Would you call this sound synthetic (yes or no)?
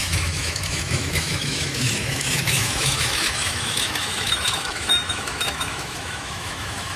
yes